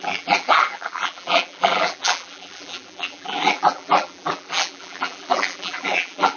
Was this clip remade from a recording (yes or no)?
yes